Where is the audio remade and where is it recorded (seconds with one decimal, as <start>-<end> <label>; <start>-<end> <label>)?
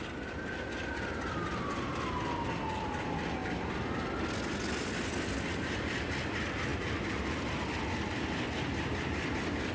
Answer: 0.0-9.7 recorded